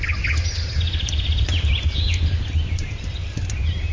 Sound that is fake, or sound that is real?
real